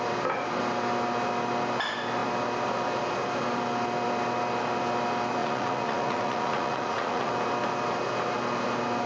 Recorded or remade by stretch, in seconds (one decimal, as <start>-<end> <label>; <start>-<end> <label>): 0.0-5.4 recorded; 5.4-7.3 remade; 7.3-9.1 recorded

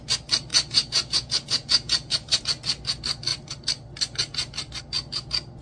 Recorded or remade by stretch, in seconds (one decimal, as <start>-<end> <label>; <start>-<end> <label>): 0.0-0.5 recorded; 0.5-2.4 remade; 2.4-5.6 recorded

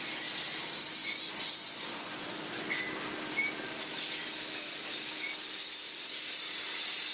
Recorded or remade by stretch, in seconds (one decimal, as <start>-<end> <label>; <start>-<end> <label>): 0.0-1.0 recorded; 1.0-2.8 remade; 2.8-7.1 recorded

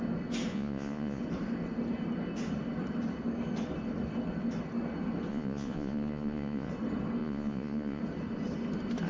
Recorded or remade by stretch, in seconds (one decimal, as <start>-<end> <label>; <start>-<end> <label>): 0.0-0.5 recorded; 0.5-1.2 remade; 1.2-5.3 recorded; 5.3-6.7 remade; 6.7-7.2 recorded; 7.2-8.0 remade; 8.0-9.1 recorded